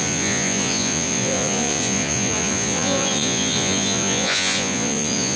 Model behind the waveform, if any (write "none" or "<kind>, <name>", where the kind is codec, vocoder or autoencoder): vocoder, Vocos